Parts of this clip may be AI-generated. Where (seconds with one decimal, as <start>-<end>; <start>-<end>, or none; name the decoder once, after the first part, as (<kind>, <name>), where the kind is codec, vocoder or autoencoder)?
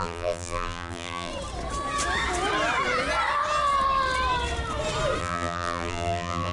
0.0-1.3 (vocoder, BigVGAN v2); 5.2-6.5